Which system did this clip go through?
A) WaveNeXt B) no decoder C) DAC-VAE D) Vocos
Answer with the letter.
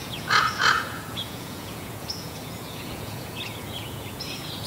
D